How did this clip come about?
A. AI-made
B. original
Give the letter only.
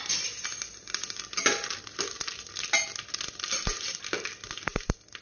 B